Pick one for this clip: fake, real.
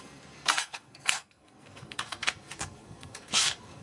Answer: fake